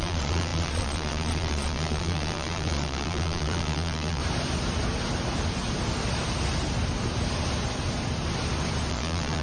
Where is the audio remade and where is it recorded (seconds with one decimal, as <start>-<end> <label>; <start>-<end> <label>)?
0.0-4.2 remade; 4.2-8.9 recorded; 8.9-9.4 remade